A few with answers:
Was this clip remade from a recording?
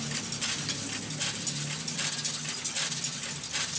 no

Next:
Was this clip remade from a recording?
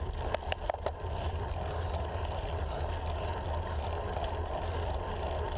no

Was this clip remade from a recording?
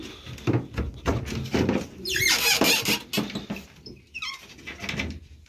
no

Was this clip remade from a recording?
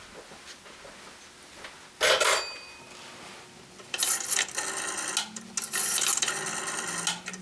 no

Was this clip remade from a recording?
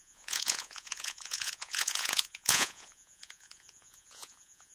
yes